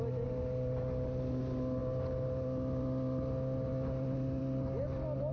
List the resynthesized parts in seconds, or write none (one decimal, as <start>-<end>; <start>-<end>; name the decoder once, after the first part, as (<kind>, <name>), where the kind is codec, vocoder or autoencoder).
none